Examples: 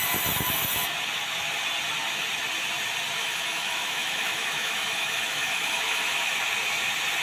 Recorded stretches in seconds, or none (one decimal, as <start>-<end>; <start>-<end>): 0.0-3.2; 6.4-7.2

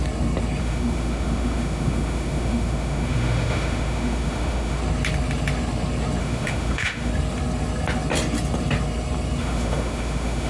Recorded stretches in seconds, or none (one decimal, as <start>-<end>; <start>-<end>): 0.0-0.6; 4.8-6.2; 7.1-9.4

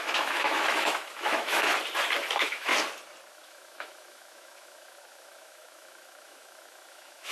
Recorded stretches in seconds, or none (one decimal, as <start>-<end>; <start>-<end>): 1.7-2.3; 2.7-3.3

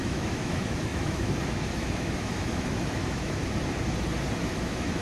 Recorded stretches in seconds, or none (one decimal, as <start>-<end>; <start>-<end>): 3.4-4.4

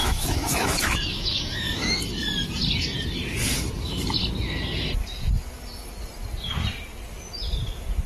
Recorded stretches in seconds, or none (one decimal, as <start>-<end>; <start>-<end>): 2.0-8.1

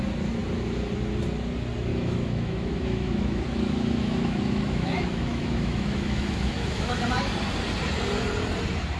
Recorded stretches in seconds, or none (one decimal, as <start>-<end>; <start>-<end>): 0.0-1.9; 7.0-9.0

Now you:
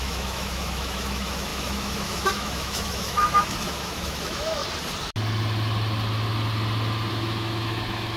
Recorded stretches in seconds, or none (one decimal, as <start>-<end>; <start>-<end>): 4.6-7.1

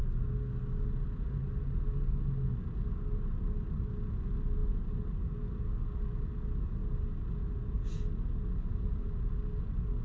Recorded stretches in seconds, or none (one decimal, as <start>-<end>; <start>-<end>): 0.0-10.0